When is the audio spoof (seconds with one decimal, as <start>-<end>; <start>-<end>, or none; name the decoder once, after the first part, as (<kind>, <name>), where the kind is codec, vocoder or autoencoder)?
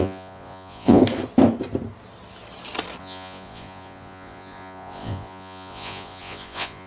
0.0-1.0 (vocoder, Vocos); 3.0-6.9